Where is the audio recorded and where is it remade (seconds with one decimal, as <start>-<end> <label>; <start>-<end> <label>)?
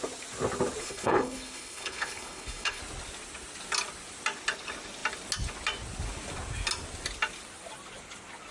0.0-0.8 recorded; 0.8-2.8 remade; 2.8-8.5 recorded